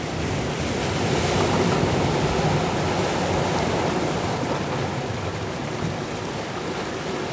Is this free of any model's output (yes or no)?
yes